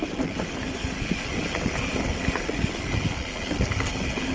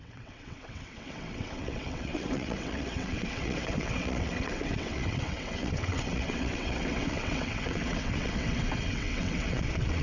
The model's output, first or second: second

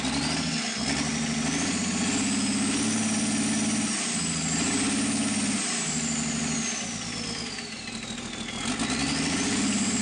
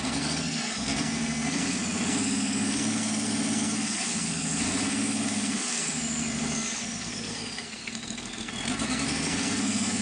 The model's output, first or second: second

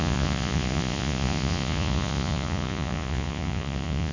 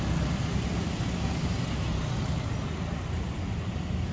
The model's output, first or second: first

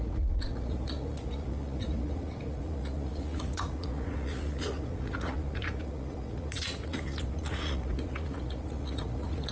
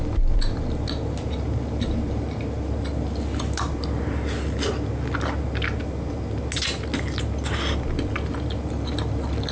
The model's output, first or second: first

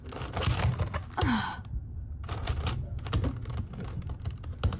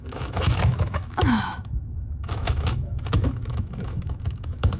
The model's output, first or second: second